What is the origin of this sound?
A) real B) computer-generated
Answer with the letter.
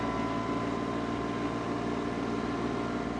A